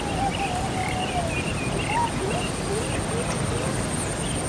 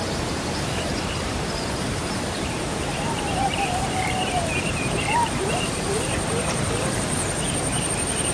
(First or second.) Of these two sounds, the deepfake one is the second